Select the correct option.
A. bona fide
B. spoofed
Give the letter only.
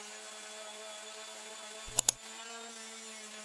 A